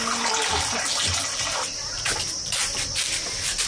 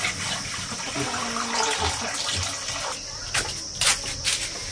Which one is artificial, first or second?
first